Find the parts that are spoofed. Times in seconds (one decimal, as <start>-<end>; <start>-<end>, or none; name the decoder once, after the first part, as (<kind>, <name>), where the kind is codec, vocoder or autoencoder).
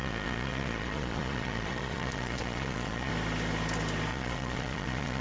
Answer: 0.0-3.1 (vocoder, Vocos); 4.1-5.2